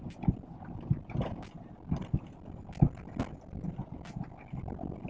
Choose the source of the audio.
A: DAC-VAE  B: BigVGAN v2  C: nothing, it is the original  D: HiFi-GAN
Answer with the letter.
C